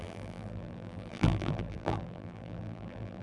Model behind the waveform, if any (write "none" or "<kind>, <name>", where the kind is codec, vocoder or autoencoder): vocoder, BigVGAN v2